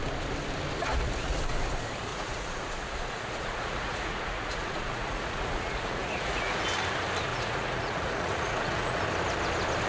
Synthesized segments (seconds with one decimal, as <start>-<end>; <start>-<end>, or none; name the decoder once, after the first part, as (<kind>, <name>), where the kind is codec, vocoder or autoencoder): 0.8-1.4 (vocoder, Vocos); 2.1-6.6; 7.3-9.0

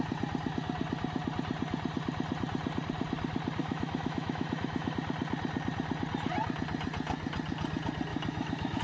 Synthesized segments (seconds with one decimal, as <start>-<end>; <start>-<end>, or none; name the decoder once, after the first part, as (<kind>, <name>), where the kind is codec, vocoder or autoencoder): 3.6-4.9 (autoencoder, DAC-VAE); 8.1-8.8

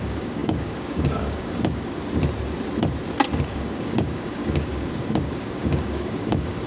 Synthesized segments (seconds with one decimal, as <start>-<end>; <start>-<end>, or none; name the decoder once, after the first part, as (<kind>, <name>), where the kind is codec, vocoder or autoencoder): 0.0-2.0 (codec, DAC); 3.4-6.7

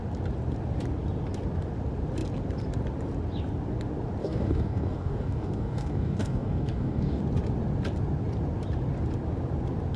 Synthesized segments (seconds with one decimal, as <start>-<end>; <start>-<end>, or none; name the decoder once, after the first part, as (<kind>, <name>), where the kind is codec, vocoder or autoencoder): 4.2-7.2 (codec, DAC)

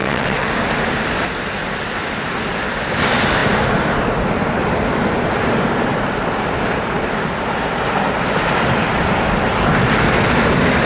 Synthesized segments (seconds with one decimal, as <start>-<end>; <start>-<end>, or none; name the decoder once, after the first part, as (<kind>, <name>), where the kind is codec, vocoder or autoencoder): 0.0-0.5 (vocoder, WaveNeXt)